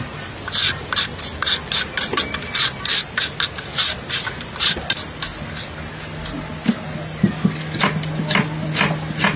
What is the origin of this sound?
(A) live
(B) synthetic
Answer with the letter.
A